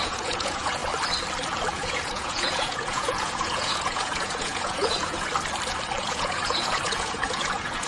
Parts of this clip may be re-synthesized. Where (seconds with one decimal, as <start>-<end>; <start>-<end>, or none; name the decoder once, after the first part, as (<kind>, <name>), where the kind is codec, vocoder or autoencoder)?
0.0-0.8 (vocoder, Vocos); 1.7-5.3; 6.0-7.9